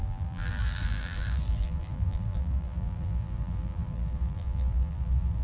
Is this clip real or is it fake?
fake